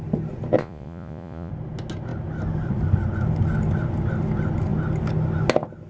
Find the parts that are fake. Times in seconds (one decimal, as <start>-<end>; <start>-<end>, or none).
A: 0.6-1.5